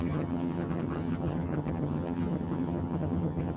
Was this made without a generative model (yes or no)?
no